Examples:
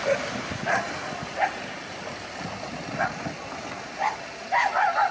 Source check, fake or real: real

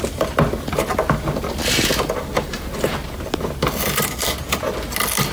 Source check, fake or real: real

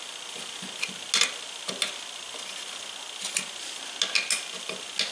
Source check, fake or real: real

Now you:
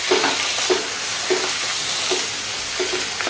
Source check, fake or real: real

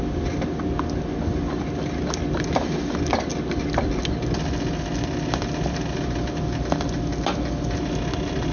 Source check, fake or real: real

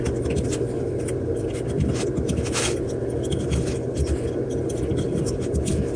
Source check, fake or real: real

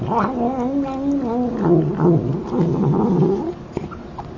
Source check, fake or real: real